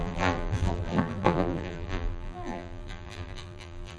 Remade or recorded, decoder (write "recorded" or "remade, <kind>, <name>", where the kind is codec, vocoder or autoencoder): remade, vocoder, BigVGAN v2